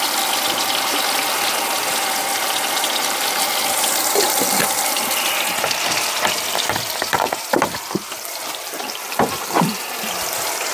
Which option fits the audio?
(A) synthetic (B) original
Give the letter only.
A